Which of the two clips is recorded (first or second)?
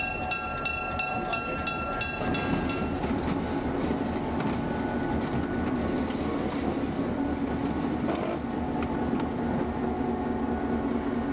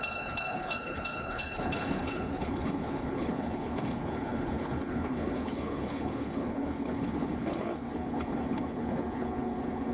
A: first